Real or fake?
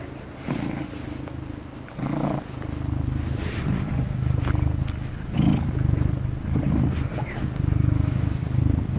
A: real